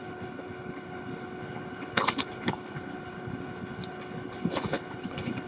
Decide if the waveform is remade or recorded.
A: remade